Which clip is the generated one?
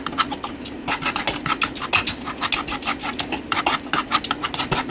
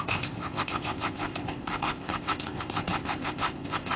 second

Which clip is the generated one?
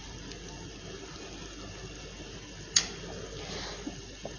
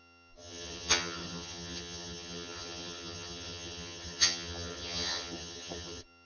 second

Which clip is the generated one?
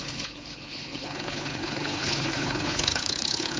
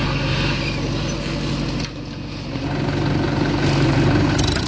first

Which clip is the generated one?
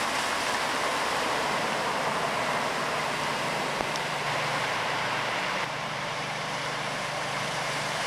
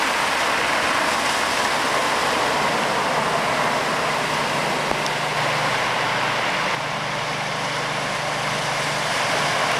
first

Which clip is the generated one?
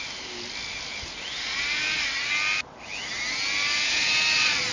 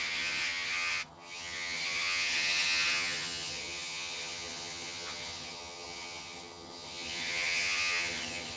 second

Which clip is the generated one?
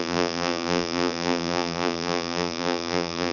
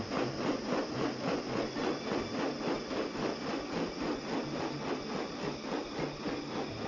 first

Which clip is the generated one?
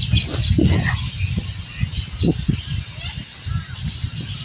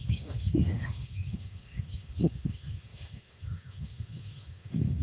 second